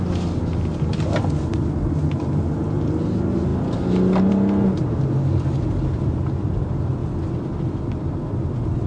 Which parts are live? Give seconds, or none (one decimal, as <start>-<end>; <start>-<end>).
0.0-8.9